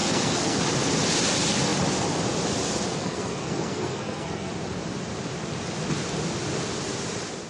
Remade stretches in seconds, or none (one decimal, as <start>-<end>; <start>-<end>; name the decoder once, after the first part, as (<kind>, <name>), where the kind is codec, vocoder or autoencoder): 0.0-0.6 (codec, SNAC); 3.0-4.5

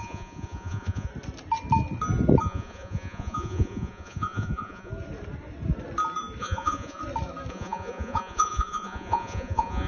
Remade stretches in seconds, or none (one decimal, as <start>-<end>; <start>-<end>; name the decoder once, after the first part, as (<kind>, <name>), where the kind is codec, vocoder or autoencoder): 0.0-1.1 (vocoder, Vocos); 2.4-4.9; 6.4-7.0; 7.5-9.9

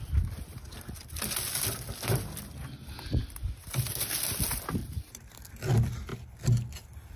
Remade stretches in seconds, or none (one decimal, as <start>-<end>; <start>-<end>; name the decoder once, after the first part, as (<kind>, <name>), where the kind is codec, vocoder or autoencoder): 4.8-5.5 (vocoder, BigVGAN v2)

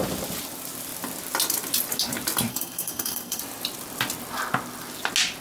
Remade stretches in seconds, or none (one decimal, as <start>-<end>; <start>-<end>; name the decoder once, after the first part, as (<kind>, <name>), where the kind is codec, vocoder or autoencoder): 2.5-3.4 (codec, SNAC)

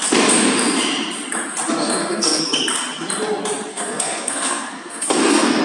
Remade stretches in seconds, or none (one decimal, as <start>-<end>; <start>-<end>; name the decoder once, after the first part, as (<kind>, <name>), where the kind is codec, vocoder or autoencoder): 1.8-2.4 (codec, SNAC); 3.7-5.6

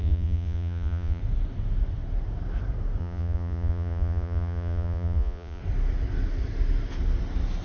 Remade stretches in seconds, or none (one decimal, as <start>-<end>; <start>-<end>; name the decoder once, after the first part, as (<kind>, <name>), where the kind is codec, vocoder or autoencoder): 0.0-1.2 (vocoder, Vocos); 3.0-5.6

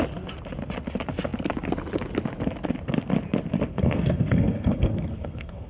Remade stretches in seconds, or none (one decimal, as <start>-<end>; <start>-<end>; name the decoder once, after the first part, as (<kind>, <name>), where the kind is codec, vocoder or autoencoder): 3.7-5.7 (codec, SNAC)

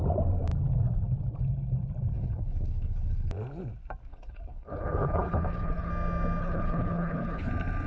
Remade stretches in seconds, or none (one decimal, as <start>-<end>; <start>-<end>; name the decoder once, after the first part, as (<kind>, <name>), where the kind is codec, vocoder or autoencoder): 2.1-3.3 (codec, HILCodec); 4.1-5.9; 6.4-7.5